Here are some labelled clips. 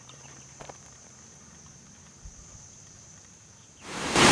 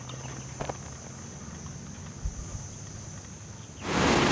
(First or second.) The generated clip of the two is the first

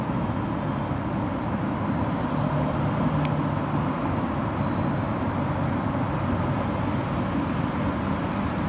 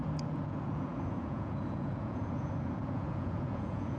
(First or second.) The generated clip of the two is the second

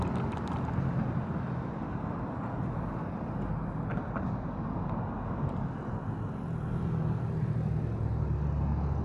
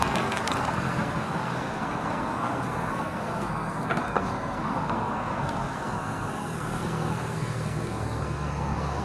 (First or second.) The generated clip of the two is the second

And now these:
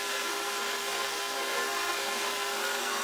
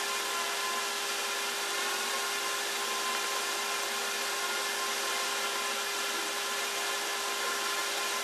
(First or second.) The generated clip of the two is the first